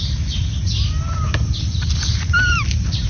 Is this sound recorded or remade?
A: recorded